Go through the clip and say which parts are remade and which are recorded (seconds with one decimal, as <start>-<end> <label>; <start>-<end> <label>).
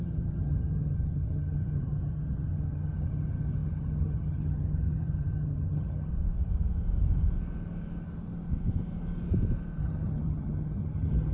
0.0-6.1 remade; 6.1-9.8 recorded; 9.8-11.3 remade